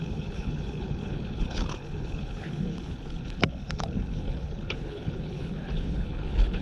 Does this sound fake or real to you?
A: fake